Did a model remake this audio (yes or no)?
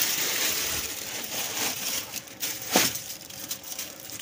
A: yes